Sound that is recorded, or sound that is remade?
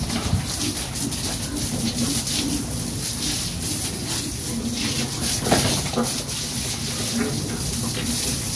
recorded